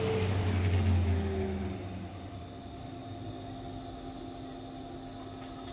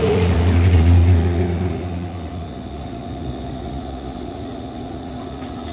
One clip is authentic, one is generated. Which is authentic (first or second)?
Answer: first